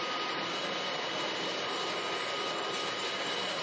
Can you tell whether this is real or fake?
real